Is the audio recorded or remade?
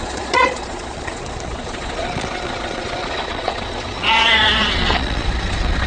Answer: remade